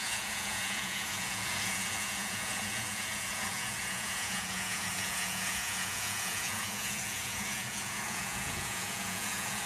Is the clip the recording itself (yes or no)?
no